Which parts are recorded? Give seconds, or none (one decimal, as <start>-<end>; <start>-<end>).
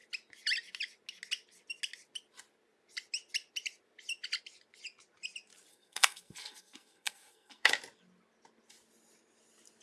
0.0-5.7; 7.7-9.8